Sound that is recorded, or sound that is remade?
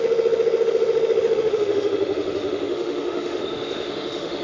remade